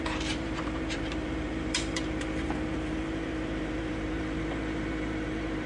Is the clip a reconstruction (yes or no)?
yes